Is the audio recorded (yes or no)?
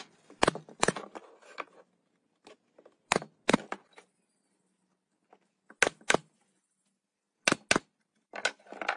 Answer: yes